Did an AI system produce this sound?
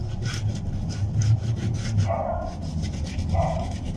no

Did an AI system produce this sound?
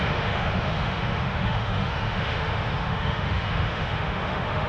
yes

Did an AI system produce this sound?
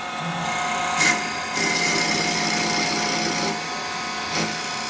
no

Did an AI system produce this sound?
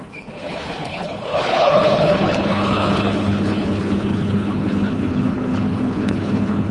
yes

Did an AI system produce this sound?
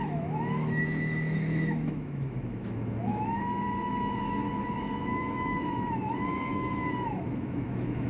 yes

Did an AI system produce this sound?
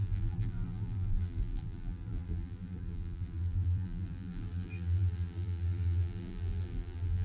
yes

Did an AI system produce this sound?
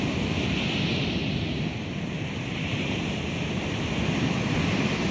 no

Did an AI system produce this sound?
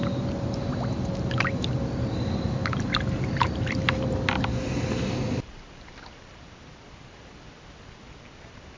no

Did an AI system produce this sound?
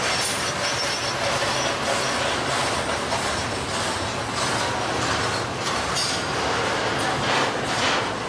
no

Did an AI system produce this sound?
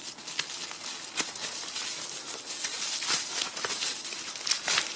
no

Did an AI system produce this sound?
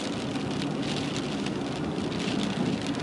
no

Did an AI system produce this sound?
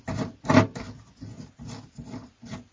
no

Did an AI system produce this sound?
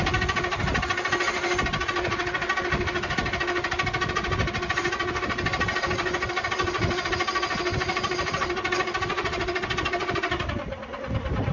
no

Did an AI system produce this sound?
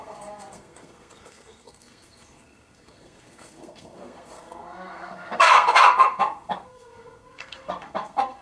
yes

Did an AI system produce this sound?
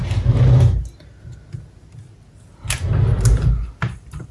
no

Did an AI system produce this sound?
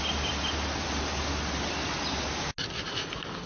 no